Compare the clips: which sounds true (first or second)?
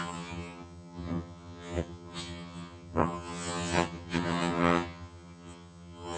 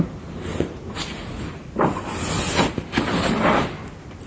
second